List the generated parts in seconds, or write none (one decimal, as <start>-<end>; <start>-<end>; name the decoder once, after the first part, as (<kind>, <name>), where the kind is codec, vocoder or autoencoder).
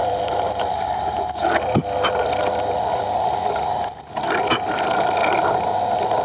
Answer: 0.0-1.4 (vocoder, BigVGAN v2)